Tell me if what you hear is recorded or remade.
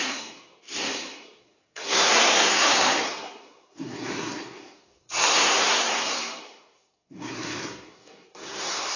remade